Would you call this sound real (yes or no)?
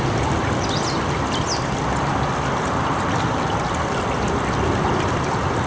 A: yes